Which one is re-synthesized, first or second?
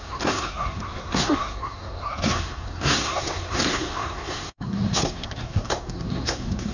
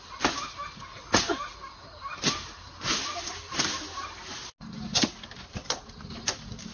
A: first